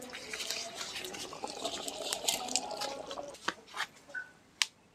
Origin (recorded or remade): recorded